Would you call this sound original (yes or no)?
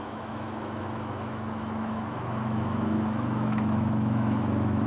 no